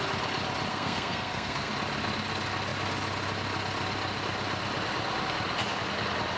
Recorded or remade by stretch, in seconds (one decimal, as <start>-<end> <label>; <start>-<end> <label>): 0.0-0.7 recorded; 0.7-1.7 remade; 1.7-6.4 recorded